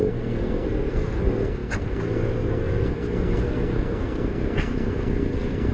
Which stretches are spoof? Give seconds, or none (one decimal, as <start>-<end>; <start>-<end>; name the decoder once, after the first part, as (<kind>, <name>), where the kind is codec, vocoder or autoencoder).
0.0-5.7 (codec, SNAC)